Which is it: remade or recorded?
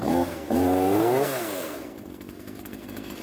remade